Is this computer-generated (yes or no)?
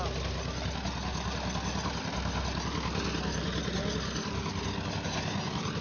no